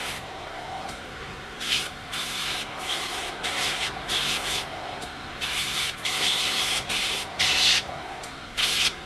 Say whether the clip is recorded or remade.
remade